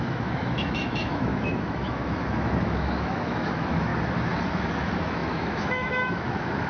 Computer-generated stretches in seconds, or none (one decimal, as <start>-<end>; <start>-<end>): 0.0-3.9; 4.5-6.7